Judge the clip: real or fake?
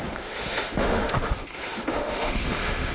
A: fake